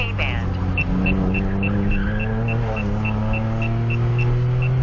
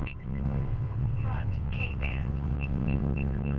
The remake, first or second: second